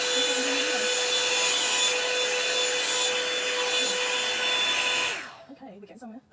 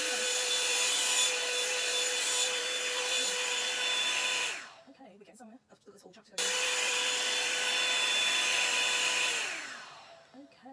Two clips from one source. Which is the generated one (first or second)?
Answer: second